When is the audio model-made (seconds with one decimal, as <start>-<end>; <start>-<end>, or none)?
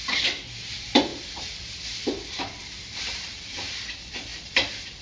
0.0-5.0